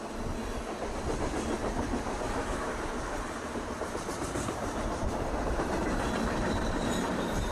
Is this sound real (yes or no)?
no